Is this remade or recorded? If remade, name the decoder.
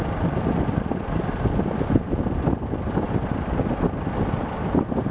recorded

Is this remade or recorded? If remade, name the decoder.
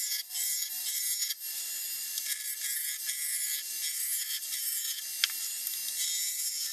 recorded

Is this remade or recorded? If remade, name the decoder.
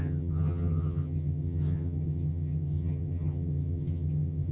remade, vocoder, HiFi-GAN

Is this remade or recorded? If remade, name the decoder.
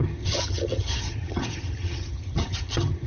remade, vocoder, HiFi-GAN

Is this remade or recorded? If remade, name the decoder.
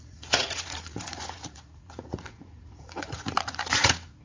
remade, vocoder, Vocos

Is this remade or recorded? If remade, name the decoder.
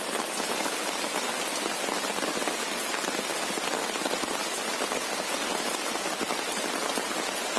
recorded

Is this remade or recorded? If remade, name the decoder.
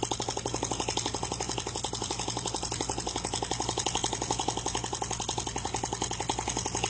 recorded